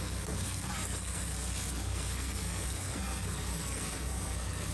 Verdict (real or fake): fake